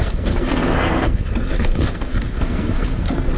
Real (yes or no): no